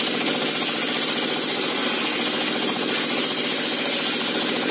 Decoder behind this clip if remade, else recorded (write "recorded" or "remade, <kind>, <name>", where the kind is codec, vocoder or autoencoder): recorded